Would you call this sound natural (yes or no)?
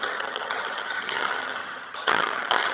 no